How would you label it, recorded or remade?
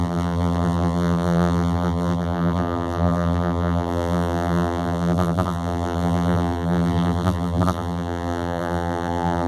remade